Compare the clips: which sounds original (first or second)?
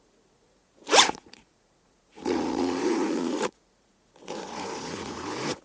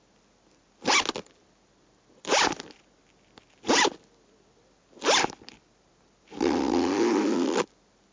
second